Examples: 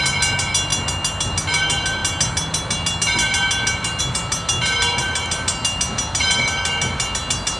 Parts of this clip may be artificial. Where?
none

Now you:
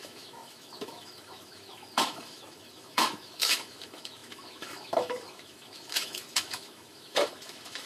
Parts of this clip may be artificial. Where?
0.0-7.9 (autoencoder, DAC-VAE)

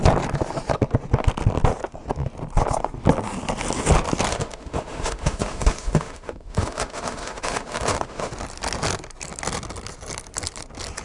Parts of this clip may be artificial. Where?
4.3-8.3 (autoencoder, DAC-VAE)

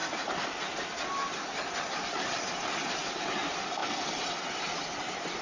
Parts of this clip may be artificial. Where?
none

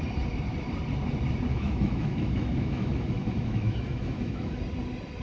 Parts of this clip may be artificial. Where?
1.5-4.6 (autoencoder, DAC-VAE)

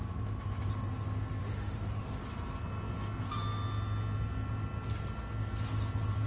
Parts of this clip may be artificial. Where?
1.4-2.2 (autoencoder, DAC-VAE)

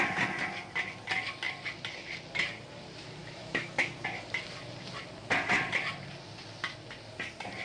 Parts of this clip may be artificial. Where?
3.2-3.9 (autoencoder, DAC-VAE)

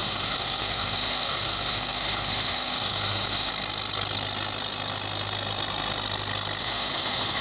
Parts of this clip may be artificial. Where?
0.0-3.5 (autoencoder, DAC-VAE); 6.6-7.4